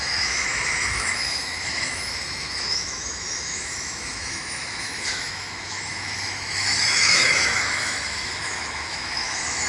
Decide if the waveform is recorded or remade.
remade